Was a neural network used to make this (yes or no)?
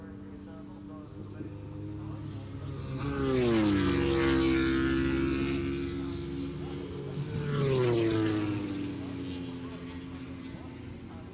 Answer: no